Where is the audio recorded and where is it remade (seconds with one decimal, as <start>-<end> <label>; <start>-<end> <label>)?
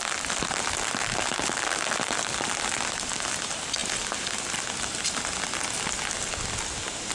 0.0-7.1 recorded